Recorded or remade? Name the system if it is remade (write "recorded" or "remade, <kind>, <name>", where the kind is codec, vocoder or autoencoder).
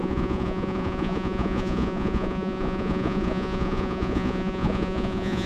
remade, vocoder, Vocos